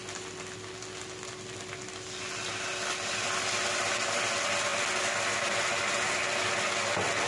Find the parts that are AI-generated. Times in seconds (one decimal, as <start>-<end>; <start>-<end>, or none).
none